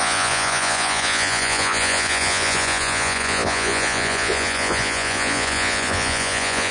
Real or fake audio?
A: fake